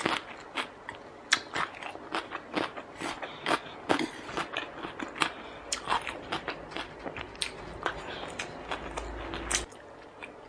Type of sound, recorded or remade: recorded